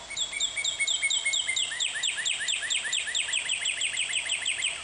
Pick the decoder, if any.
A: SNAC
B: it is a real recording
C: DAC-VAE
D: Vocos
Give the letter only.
B